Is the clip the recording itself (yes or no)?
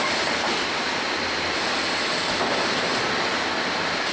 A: yes